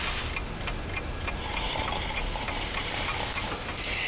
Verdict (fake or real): real